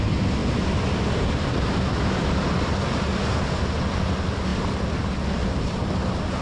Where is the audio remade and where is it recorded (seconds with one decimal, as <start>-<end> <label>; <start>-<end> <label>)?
0.0-6.4 recorded